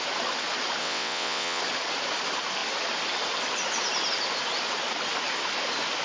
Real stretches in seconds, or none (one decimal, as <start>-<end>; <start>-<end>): 0.0-0.8; 1.6-6.0